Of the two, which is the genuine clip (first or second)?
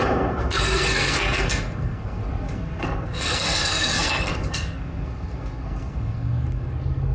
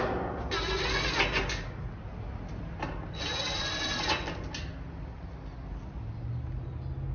second